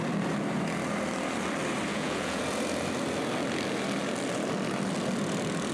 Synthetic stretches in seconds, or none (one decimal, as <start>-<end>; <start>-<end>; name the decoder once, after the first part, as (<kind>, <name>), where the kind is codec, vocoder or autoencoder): 1.9-2.4 (vocoder, Vocos)